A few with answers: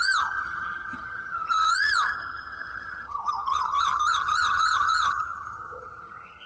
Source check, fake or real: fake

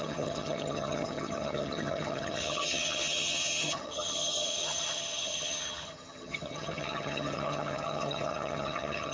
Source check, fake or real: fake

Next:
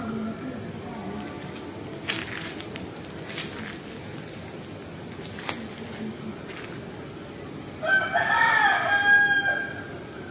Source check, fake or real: real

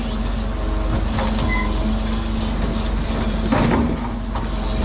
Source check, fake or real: real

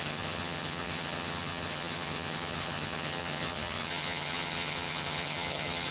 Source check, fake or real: fake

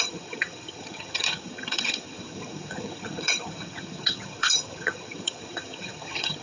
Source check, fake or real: fake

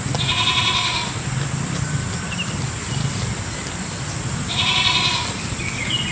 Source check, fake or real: real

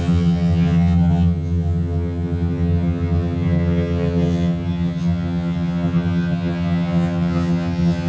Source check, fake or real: fake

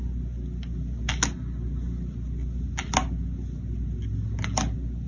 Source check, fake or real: real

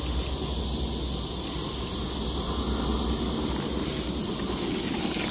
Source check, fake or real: real